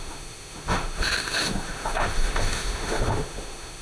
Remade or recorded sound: remade